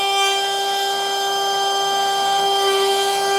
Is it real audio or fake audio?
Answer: fake